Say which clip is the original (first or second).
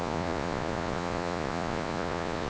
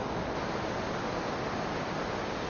second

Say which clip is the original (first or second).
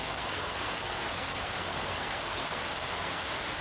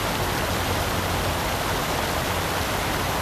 second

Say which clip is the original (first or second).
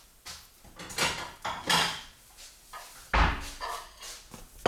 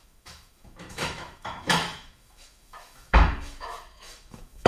first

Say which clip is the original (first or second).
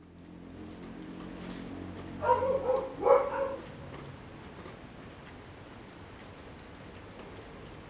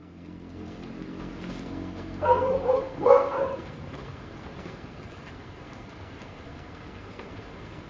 first